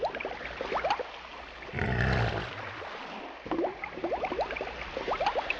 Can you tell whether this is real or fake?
real